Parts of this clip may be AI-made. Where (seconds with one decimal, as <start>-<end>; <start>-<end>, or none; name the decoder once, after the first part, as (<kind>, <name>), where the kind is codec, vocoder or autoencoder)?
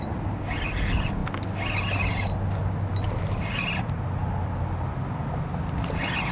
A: none